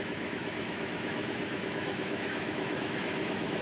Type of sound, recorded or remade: remade